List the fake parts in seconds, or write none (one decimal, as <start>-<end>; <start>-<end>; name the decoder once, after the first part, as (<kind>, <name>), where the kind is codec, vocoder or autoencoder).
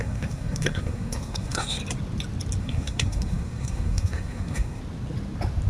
0.0-1.8 (codec, SNAC); 2.6-4.8